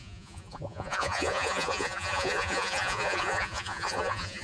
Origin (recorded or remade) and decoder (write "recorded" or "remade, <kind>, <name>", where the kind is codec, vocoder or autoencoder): remade, vocoder, Vocos